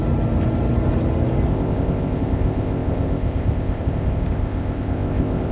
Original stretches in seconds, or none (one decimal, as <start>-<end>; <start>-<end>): 0.0-1.5